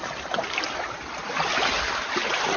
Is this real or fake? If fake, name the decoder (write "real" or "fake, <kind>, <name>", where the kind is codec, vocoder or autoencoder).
real